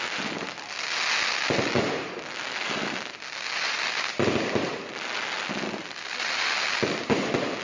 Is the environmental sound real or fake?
real